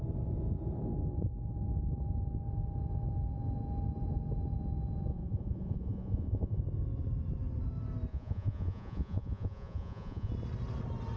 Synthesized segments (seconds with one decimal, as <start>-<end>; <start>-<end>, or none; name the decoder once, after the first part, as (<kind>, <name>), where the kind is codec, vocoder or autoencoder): 5.1-6.6 (vocoder, Vocos); 8.1-10.3